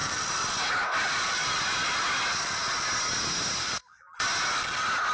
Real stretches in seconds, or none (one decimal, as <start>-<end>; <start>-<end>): 0.0-5.1